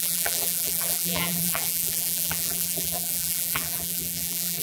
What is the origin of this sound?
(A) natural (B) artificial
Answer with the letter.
B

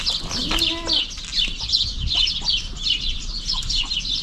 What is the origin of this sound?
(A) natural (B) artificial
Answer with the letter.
A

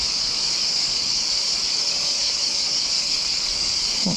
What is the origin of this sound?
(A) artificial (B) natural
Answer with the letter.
A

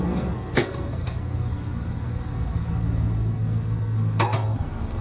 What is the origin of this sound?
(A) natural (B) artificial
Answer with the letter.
B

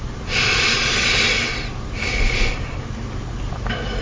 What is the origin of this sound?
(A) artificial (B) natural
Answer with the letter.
B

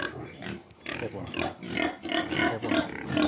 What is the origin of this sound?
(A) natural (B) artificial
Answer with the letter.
A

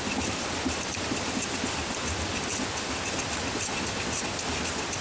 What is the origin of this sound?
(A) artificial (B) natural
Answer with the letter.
B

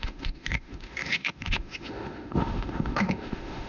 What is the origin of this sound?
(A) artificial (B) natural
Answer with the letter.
A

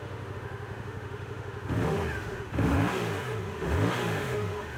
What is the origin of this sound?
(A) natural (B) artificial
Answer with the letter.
B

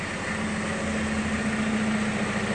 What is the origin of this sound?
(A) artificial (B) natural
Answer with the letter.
B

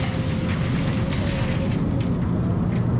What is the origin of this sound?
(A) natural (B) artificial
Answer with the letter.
A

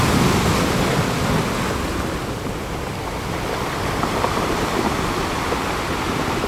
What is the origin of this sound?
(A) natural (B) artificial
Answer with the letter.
A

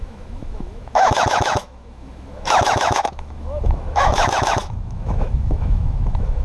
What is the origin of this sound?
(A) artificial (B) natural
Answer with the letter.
A